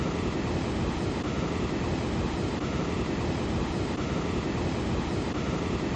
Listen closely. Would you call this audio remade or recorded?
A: recorded